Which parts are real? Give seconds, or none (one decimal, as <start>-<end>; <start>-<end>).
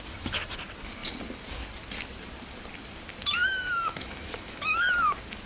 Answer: 0.0-3.4; 4.9-5.5